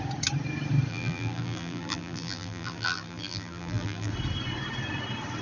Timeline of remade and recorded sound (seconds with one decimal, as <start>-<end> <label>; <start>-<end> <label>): 0.0-0.9 recorded; 0.9-4.1 remade; 4.1-5.4 recorded